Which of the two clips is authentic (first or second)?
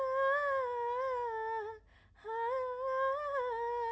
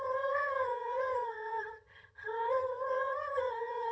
first